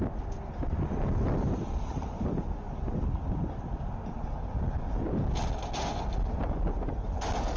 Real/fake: real